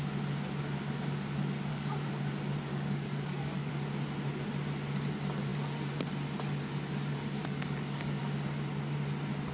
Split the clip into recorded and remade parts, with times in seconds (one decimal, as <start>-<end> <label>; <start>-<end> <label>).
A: 0.0-1.7 recorded; 1.7-2.2 remade; 2.2-2.7 recorded; 2.7-3.7 remade; 3.7-7.4 recorded; 7.4-8.2 remade; 8.2-9.5 recorded